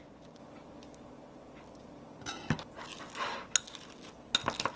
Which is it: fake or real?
real